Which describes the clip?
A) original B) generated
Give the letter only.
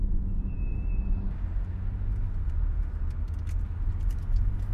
A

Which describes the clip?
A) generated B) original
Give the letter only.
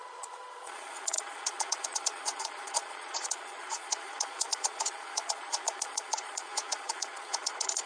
A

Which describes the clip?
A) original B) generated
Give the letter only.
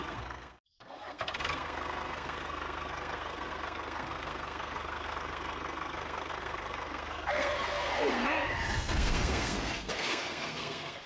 B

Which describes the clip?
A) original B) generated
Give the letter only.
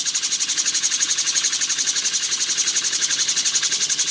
B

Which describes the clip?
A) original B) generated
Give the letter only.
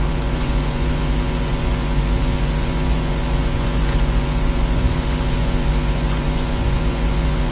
B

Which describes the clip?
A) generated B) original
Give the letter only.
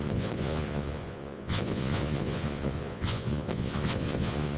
A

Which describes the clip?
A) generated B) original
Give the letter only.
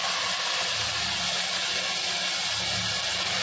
B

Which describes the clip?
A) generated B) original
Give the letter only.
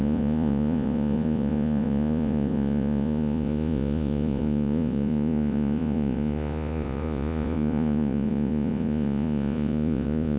A